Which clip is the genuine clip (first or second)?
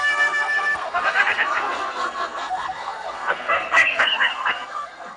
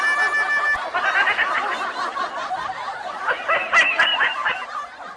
second